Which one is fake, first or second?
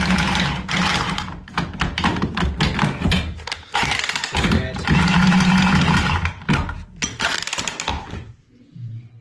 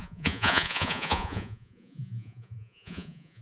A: second